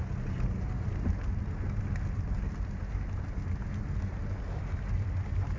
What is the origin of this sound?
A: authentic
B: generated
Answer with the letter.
A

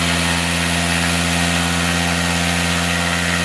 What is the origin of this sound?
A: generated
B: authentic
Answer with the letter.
B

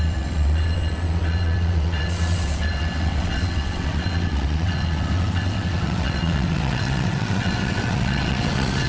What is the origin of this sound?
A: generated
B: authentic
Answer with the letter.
A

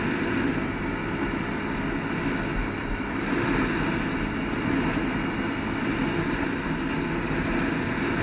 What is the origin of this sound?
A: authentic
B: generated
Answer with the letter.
A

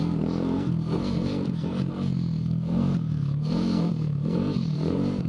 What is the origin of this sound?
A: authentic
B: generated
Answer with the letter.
B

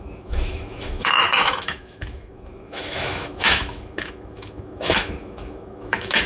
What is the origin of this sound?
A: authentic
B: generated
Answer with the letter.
B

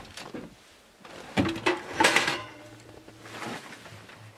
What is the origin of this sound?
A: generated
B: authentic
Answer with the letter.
B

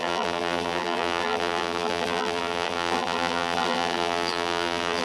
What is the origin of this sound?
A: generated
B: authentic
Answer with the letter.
A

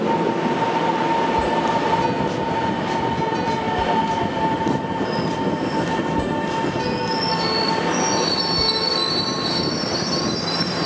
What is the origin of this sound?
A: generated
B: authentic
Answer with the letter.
B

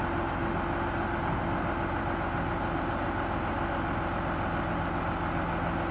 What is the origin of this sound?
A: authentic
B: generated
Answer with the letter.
A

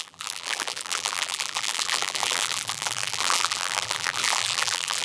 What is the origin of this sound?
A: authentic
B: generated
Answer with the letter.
B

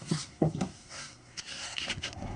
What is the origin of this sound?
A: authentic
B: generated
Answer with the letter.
B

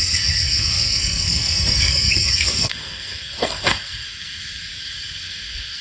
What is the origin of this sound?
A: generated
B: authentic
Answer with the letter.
A